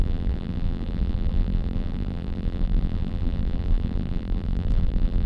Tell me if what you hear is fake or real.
fake